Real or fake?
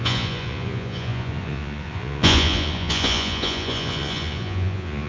fake